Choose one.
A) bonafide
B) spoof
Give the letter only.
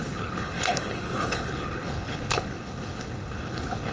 B